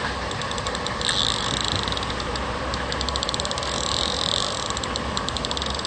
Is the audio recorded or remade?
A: recorded